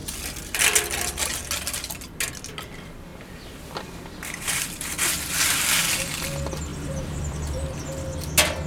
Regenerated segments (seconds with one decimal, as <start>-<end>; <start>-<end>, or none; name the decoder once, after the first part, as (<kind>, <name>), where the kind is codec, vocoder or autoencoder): 6.7-7.8 (vocoder, BigVGAN v2)